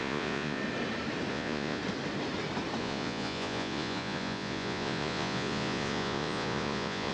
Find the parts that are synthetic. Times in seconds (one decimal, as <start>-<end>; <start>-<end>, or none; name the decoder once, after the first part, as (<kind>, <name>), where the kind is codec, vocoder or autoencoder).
0.0-0.6 (vocoder, Vocos); 1.3-1.8; 2.8-7.1

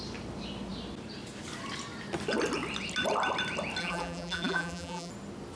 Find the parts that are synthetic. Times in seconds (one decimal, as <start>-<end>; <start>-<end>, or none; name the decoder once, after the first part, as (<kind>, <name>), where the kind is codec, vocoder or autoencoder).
3.8-5.1 (vocoder, BigVGAN v2)

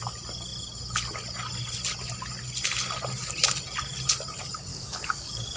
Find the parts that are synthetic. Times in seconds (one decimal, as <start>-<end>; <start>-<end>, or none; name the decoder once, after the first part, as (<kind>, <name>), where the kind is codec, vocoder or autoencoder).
4.7-5.6 (codec, DAC)

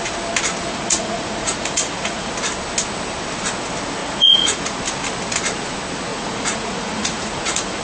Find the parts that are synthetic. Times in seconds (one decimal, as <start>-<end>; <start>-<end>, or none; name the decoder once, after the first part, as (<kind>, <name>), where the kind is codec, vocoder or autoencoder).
0.7-2.3 (vocoder, Vocos); 4.0-4.8; 6.1-7.8

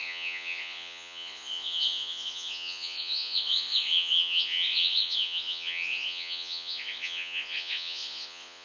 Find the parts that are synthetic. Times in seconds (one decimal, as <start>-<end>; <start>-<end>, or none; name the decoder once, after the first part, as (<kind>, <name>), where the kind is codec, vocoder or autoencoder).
0.0-8.6 (vocoder, Vocos)

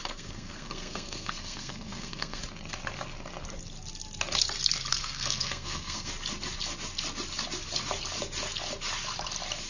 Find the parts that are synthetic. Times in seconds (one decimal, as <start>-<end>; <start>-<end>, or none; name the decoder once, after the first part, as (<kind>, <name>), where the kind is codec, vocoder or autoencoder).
0.0-2.4 (codec, SNAC); 4.9-6.1

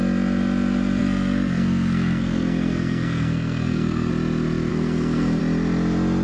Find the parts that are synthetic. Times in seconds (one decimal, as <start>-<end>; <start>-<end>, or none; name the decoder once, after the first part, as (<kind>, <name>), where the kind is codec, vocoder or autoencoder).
1.0-4.1 (codec, SNAC); 4.7-5.4